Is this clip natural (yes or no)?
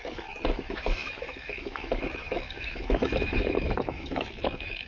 no